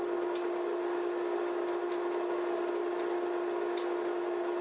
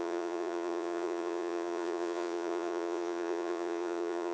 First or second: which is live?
first